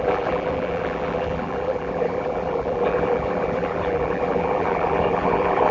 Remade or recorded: remade